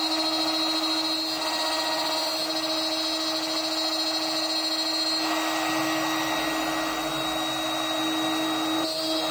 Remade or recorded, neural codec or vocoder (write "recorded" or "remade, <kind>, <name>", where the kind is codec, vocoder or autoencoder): recorded